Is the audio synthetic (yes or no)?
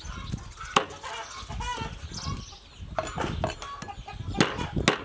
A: no